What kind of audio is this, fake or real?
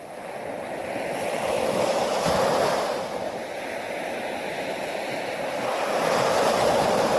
real